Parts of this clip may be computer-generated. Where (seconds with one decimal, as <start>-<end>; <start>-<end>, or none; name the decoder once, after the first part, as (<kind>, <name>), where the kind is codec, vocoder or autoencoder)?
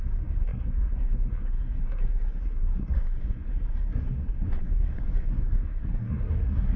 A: 0.0-6.8 (codec, SNAC)